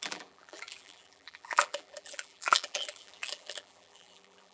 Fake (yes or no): yes